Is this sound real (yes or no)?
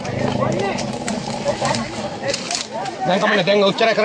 yes